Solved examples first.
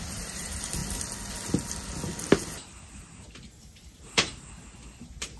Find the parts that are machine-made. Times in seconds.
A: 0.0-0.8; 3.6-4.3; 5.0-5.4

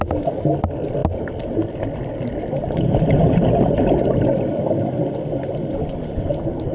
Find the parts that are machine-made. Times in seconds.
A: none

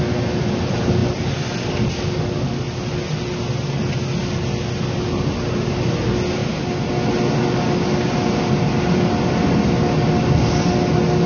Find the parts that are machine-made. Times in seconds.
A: none

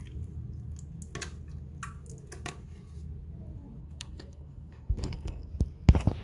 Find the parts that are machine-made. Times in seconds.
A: 3.8-5.5

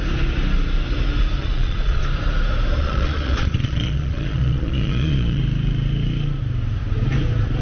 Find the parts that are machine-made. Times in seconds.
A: 1.4-2.0; 2.8-5.4

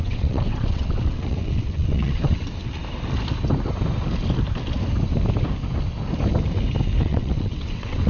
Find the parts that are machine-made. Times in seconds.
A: 0.0-2.8; 7.0-8.1

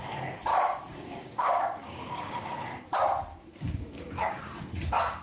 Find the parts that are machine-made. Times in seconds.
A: 0.5-2.6; 3.3-4.4